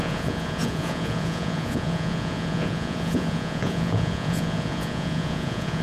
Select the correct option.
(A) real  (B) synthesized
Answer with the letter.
B